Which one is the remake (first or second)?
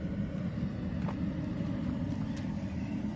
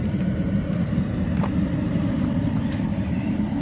second